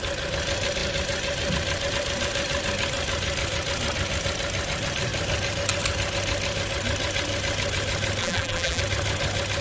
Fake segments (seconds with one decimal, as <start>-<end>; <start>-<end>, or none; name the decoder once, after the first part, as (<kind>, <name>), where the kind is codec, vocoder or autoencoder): 8.2-8.8 (vocoder, BigVGAN v2)